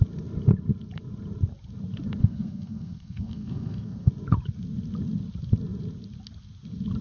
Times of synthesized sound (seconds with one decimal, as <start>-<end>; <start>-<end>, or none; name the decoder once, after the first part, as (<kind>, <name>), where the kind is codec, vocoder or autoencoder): 2.2-4.1 (codec, SNAC)